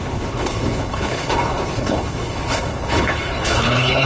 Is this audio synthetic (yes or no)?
yes